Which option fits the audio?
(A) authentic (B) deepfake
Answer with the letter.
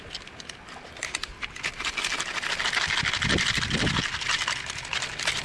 A